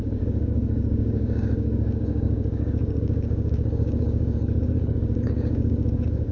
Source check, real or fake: fake